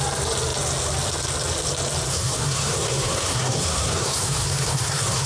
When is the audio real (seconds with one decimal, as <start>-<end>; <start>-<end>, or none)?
0.0-2.1